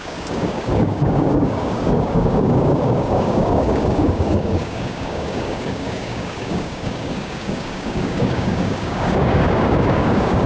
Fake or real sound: fake